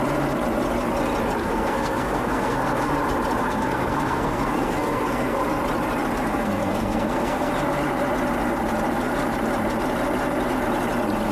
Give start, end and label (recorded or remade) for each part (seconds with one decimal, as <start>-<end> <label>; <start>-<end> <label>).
0.0-1.4 recorded; 1.4-2.9 remade; 2.9-3.4 recorded; 3.4-5.4 remade; 5.4-6.3 recorded; 6.3-7.5 remade; 7.5-11.3 recorded